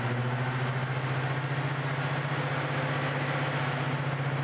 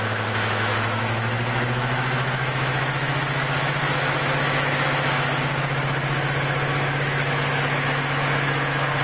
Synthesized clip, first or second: second